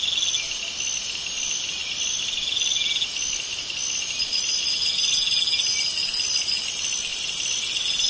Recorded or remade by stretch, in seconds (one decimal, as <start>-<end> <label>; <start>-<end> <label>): 0.0-8.1 recorded